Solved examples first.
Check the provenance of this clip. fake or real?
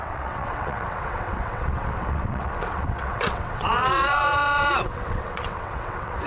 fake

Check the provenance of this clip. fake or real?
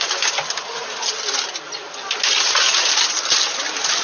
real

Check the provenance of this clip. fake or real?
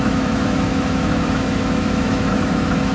fake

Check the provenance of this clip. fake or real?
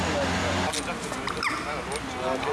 real